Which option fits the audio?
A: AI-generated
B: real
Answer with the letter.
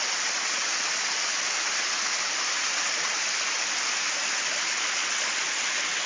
B